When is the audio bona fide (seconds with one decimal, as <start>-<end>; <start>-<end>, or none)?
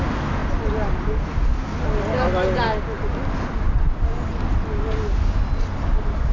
0.0-6.3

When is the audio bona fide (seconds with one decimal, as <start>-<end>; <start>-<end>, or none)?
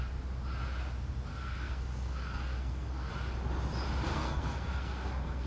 0.0-1.3; 3.1-4.1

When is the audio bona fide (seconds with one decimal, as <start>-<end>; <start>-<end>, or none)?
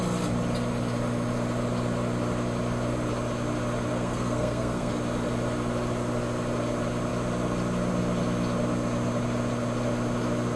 0.0-3.9; 4.9-10.6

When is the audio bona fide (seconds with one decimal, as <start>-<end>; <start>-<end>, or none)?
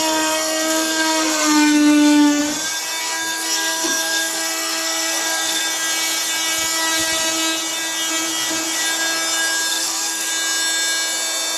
2.4-3.0; 5.6-9.7; 10.3-11.6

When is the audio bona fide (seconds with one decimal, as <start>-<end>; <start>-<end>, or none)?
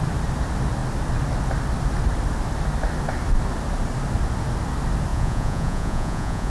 0.0-5.1